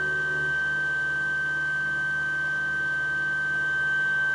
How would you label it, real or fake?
real